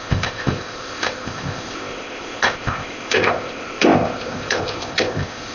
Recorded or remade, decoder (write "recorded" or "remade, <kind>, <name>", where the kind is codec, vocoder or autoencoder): remade, codec, ZipCodec